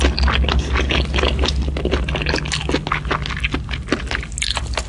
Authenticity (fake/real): real